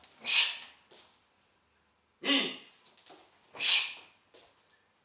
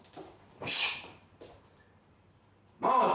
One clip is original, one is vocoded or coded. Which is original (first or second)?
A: first